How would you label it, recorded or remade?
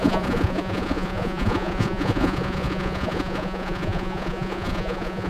remade